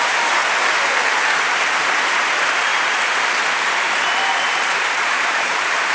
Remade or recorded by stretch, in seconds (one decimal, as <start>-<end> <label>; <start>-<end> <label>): 0.0-0.4 remade; 0.4-1.8 recorded; 1.8-2.7 remade; 2.7-4.5 recorded; 4.5-5.9 remade